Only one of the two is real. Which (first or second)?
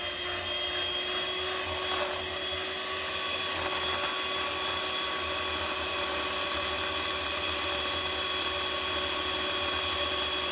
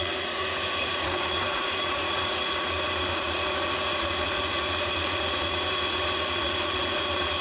first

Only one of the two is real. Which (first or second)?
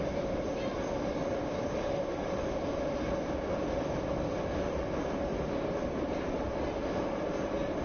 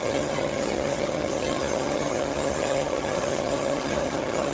first